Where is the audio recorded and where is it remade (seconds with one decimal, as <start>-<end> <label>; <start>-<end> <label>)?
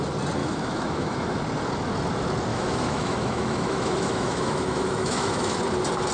0.0-0.4 recorded; 0.4-1.4 remade; 1.4-2.5 recorded; 2.5-5.6 remade; 5.6-6.1 recorded